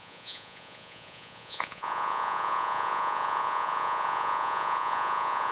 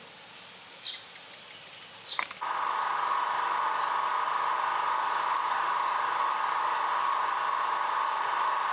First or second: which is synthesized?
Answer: first